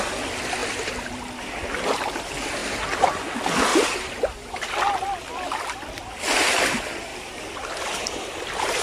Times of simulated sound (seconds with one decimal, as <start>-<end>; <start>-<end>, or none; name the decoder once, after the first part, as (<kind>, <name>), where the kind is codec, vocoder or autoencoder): 2.6-3.3 (vocoder, BigVGAN v2); 3.7-4.7; 7.1-8.8